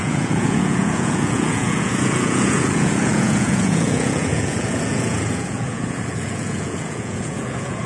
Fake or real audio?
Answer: fake